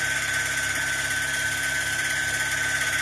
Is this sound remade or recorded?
remade